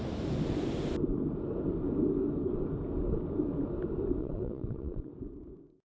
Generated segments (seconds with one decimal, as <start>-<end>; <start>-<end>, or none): 4.2-5.1